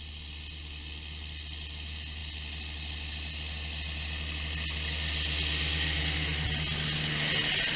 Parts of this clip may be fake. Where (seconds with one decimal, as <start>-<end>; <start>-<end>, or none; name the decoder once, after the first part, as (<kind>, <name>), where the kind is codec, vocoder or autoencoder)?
none